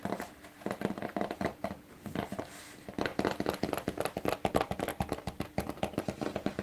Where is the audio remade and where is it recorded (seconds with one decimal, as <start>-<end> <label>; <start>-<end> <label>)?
0.0-1.1 remade; 1.1-1.6 recorded; 1.6-3.1 remade; 3.1-4.0 recorded; 4.0-4.9 remade; 4.9-6.0 recorded; 6.0-6.6 remade